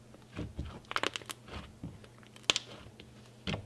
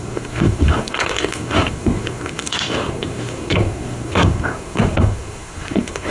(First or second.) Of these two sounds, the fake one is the second